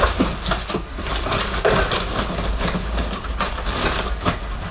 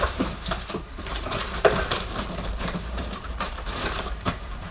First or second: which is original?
first